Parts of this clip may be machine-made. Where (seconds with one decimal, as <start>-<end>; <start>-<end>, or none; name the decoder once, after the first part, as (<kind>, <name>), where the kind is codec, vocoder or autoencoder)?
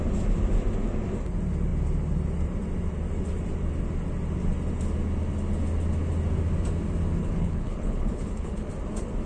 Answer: 7.2-8.7 (codec, HILCodec)